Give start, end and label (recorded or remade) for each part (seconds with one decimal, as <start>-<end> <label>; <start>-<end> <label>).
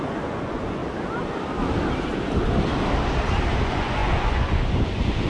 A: 0.0-0.8 remade; 0.8-3.6 recorded; 3.6-5.3 remade